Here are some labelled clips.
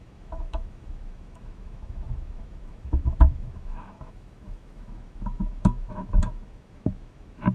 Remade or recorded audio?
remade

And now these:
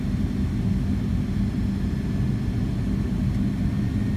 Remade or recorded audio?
recorded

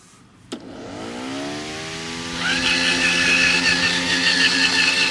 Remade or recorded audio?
recorded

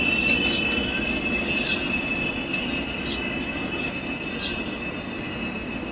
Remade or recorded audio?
recorded